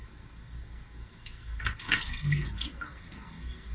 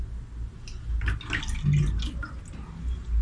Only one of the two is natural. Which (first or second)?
second